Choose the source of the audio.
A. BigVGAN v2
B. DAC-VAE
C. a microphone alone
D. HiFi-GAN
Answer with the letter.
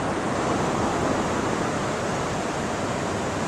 A